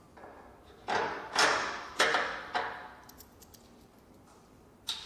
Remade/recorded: remade